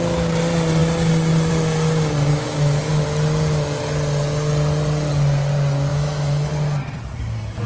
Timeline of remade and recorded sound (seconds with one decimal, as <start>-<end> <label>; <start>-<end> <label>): 0.0-2.3 recorded; 2.3-2.9 remade; 2.9-5.9 recorded; 5.9-6.5 remade; 6.5-7.7 recorded